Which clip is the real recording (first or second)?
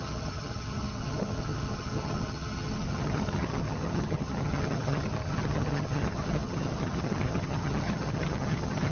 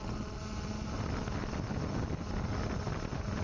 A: second